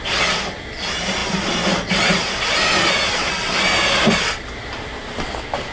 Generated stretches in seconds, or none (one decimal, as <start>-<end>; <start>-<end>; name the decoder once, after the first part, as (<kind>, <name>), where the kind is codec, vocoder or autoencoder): none

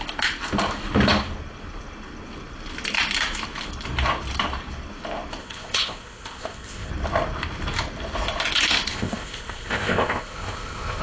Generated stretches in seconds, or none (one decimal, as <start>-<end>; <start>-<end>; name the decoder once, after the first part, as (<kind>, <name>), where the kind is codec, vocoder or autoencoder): 5.4-6.9 (codec, ZipCodec); 8.9-11.0

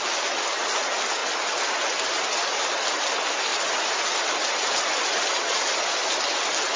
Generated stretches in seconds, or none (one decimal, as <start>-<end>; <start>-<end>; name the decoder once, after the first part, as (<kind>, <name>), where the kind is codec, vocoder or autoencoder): none

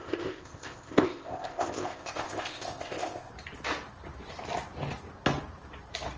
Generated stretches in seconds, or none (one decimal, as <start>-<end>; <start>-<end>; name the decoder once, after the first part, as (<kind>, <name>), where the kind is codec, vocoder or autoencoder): 0.0-3.3 (codec, ZipCodec)

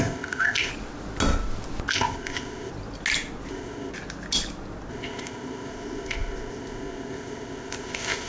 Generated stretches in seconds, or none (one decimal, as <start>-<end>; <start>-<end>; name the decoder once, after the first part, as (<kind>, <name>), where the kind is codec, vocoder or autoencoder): 0.0-0.7 (codec, ZipCodec); 1.9-2.7; 3.5-3.9; 4.9-8.3

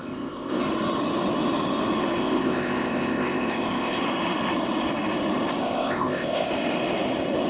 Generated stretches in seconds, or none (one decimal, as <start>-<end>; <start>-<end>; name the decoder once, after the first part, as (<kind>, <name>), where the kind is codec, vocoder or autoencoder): 0.0-0.6 (codec, ZipCodec); 2.2-4.0; 5.6-6.5

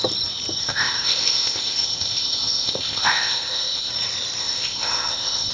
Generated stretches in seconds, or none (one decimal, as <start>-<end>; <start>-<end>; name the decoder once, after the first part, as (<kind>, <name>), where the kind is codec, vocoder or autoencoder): 0.6-3.9 (codec, ZipCodec); 4.4-5.5

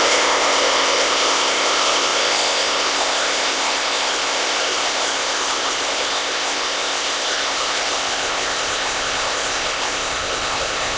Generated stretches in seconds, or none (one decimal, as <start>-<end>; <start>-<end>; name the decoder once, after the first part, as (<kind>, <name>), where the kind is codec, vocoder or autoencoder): 0.0-11.0 (codec, ZipCodec)